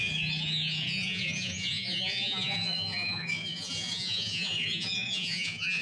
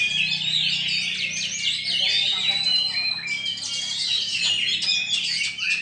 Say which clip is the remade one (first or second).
first